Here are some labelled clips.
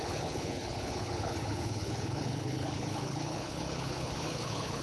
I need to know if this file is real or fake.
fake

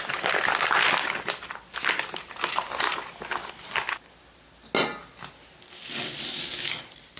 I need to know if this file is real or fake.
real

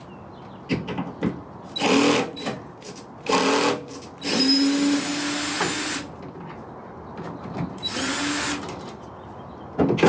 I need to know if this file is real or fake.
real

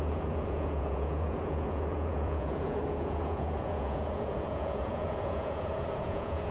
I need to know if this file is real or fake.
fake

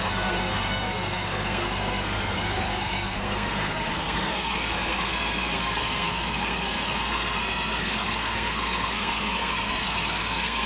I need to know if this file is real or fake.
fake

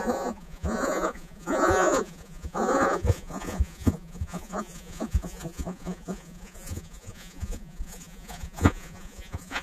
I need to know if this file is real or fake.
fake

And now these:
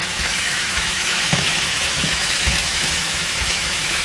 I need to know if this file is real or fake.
fake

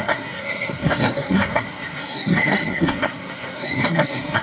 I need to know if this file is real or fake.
fake